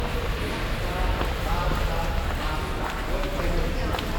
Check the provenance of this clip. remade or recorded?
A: recorded